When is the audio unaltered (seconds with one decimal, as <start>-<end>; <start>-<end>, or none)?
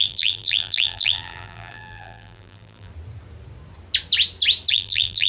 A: 2.9-4.7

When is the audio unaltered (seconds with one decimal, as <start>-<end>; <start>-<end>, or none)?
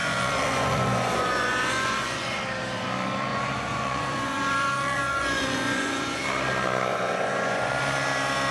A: 2.4-3.3; 6.2-6.9; 7.7-8.5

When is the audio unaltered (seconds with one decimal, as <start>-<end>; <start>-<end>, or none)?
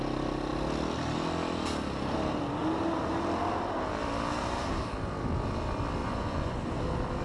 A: 0.0-6.0; 6.7-7.2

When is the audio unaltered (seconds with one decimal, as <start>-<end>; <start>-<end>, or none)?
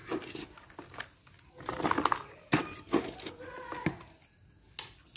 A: 0.0-5.2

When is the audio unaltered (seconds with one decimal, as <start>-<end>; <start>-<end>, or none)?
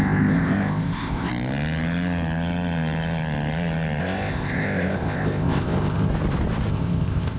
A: 1.3-4.0; 6.1-6.7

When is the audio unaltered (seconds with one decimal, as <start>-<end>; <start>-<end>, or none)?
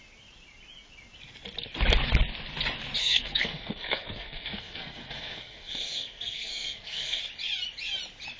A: 0.0-3.0; 7.2-8.4